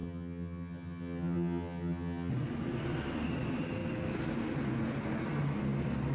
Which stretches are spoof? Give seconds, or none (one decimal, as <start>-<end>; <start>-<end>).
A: 0.0-2.3